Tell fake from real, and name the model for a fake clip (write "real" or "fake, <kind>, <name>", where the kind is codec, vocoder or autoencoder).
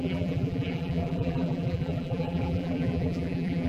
fake, vocoder, BigVGAN v2